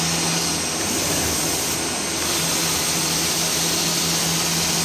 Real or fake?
real